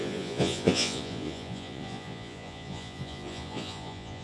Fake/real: fake